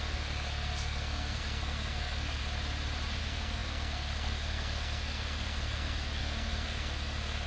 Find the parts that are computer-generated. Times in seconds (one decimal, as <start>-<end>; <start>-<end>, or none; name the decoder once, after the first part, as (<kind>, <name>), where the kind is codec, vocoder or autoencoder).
0.0-2.4 (codec, SNAC); 3.2-7.5